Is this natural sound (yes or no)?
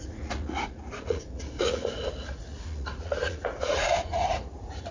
no